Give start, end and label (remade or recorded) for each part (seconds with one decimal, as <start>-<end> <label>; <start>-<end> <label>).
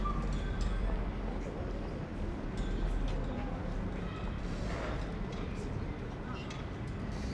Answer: 0.0-7.3 recorded